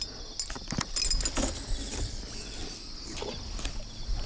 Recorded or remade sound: recorded